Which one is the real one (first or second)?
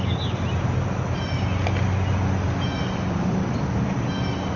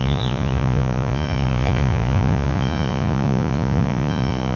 first